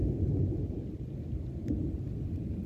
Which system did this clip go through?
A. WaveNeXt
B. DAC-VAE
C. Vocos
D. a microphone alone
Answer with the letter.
D